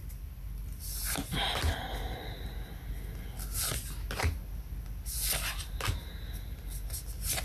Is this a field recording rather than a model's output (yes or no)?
yes